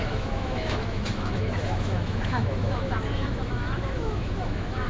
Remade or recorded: remade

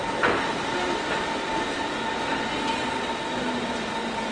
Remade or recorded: recorded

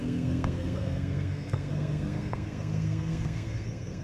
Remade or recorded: remade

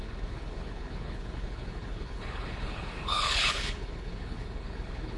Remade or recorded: remade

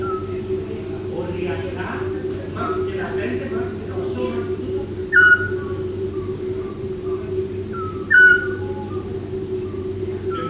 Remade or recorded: recorded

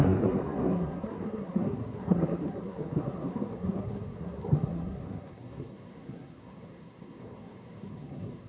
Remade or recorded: remade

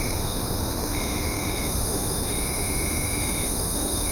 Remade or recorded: remade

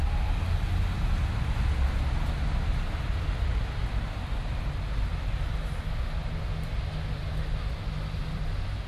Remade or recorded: recorded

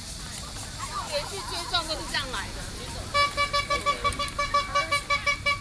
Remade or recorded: recorded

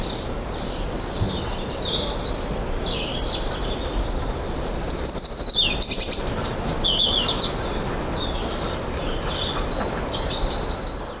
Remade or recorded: recorded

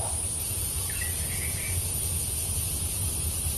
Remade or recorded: recorded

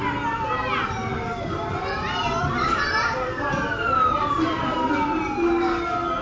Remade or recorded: recorded